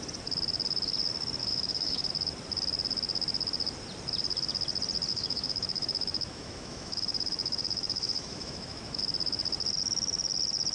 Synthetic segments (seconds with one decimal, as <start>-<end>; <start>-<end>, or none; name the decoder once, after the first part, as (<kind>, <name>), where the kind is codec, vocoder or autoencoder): 1.4-2.1 (autoencoder, DAC-VAE); 5.1-9.0